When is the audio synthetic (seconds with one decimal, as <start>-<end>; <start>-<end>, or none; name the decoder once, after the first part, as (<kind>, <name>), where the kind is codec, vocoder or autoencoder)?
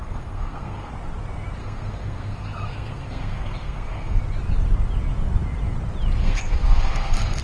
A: 0.0-0.9 (codec, SNAC); 1.6-4.2; 6.2-7.4